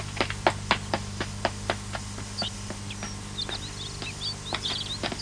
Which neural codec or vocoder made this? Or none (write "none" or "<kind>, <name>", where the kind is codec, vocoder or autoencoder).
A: none